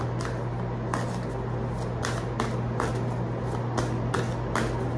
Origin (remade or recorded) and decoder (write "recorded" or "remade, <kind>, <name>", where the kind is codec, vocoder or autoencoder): recorded